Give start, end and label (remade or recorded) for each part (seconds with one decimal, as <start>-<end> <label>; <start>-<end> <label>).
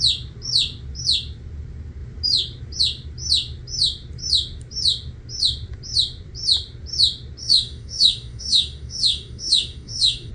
0.0-7.4 recorded; 7.4-10.3 remade